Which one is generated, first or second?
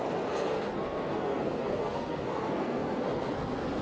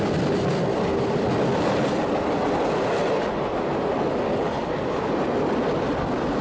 first